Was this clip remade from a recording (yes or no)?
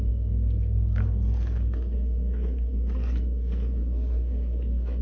yes